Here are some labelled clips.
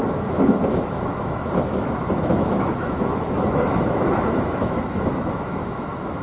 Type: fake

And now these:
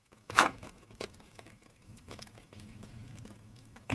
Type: fake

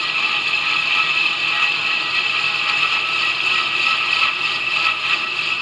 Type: real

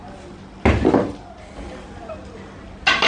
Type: real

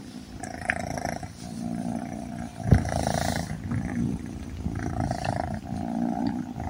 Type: real